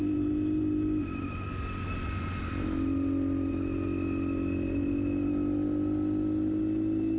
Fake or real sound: real